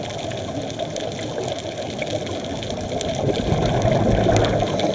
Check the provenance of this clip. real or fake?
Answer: real